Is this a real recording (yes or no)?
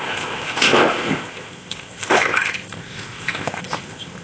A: no